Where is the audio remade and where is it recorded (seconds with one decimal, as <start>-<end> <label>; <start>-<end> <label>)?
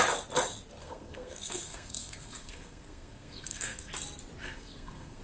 0.0-0.8 recorded; 0.8-3.9 remade; 3.9-4.4 recorded; 4.4-5.2 remade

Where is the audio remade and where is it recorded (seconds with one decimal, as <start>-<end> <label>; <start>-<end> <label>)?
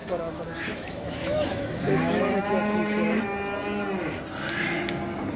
0.0-3.2 remade; 3.2-5.4 recorded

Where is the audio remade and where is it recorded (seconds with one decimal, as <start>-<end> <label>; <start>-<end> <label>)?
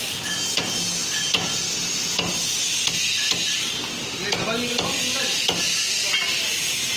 0.0-7.0 recorded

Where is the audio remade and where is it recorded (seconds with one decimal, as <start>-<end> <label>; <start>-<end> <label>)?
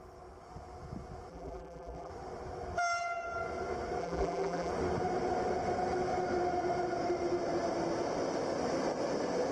0.0-1.3 recorded; 1.3-2.1 remade; 2.1-4.0 recorded; 4.0-4.7 remade; 4.7-9.5 recorded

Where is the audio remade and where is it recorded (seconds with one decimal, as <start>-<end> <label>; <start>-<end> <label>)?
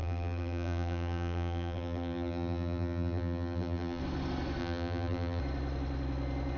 0.0-4.0 remade; 4.0-4.6 recorded; 4.6-5.4 remade; 5.4-6.6 recorded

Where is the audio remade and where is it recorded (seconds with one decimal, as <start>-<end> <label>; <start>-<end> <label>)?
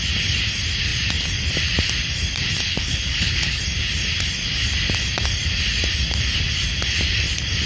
0.0-2.7 recorded; 2.7-3.6 remade; 3.6-7.7 recorded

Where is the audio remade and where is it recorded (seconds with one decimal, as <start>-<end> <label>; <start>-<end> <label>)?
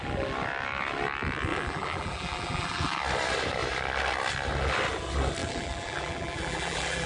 0.0-1.5 recorded; 1.5-3.0 remade; 3.0-5.4 recorded; 5.4-7.1 remade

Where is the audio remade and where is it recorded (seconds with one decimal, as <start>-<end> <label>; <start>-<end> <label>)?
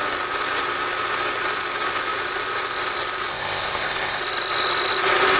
0.0-3.3 recorded; 3.3-4.2 remade; 4.2-5.4 recorded